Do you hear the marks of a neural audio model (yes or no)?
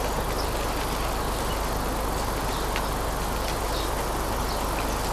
no